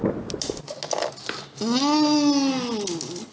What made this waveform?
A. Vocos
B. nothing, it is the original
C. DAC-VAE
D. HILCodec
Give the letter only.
B